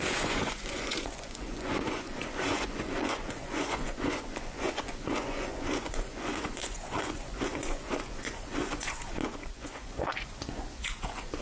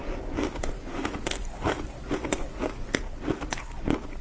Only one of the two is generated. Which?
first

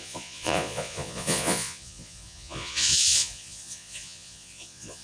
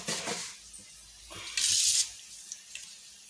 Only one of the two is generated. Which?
first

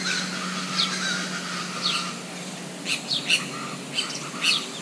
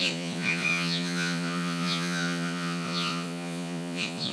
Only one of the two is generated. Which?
second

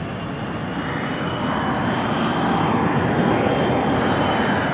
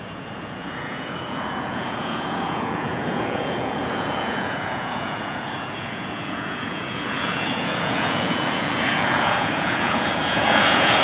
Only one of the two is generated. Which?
second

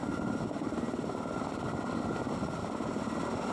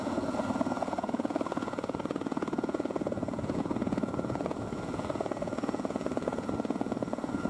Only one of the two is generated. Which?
second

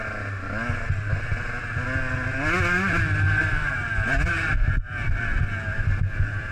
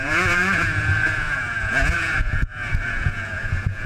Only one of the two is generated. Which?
second